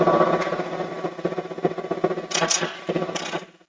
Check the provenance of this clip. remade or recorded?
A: recorded